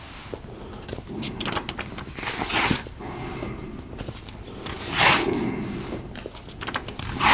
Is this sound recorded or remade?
recorded